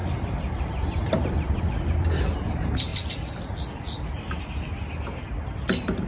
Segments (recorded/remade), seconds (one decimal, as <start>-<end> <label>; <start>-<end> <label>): 0.0-2.9 remade; 2.9-4.4 recorded; 4.4-6.1 remade